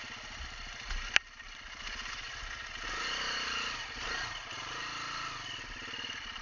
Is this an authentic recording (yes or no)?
yes